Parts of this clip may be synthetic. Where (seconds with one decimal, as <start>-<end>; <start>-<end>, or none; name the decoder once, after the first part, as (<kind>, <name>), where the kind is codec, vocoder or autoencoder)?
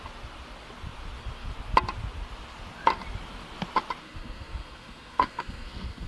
4.0-6.1 (codec, SNAC)